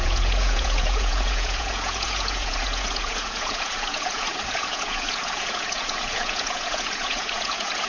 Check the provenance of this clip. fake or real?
fake